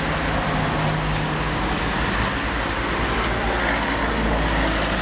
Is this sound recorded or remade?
recorded